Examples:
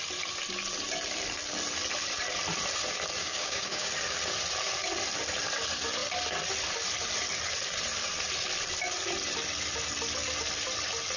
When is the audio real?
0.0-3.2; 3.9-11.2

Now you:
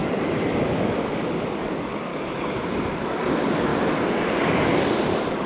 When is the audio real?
0.0-0.6; 2.1-2.9; 3.7-4.3

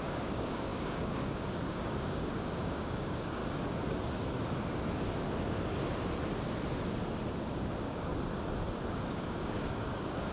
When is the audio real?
3.4-7.4; 8.1-9.1

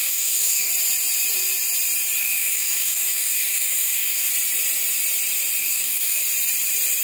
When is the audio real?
0.7-2.2; 4.3-5.6; 6.2-7.0

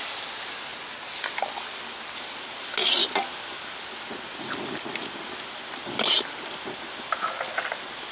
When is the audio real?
0.0-8.1

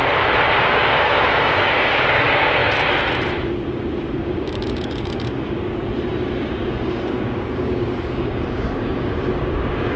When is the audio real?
0.0-0.5; 2.6-3.7; 5.8-6.4

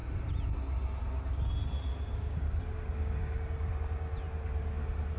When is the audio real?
0.0-1.9; 3.7-5.2

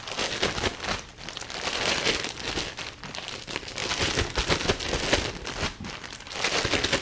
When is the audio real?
0.0-7.0